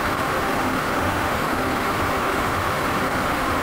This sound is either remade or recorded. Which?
remade